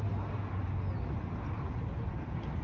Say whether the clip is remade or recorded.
recorded